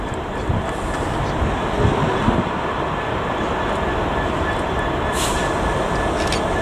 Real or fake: real